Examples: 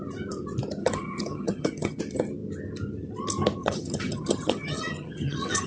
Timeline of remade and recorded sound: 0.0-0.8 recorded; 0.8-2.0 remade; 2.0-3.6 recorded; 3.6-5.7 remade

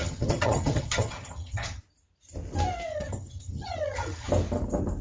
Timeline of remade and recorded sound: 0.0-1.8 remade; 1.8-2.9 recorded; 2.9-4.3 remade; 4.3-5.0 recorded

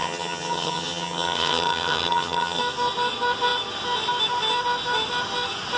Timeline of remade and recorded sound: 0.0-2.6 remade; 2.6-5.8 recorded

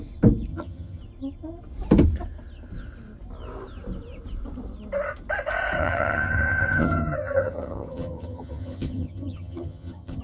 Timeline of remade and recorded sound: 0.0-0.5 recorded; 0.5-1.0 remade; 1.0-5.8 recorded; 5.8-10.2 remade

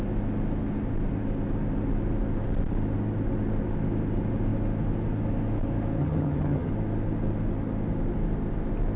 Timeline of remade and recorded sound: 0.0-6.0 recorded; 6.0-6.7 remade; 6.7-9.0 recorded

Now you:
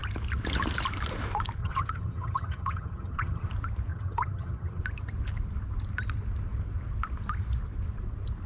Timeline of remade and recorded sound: 0.0-1.6 recorded; 1.6-3.5 remade; 3.5-3.9 recorded; 3.9-4.8 remade; 4.8-8.5 recorded

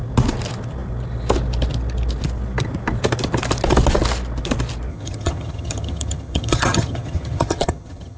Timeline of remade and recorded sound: 0.0-4.9 recorded; 4.9-8.2 remade